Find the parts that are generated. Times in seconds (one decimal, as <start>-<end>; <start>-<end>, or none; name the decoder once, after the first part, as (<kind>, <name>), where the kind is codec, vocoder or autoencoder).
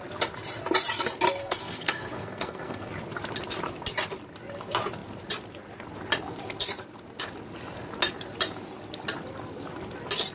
1.4-2.9 (codec, SNAC)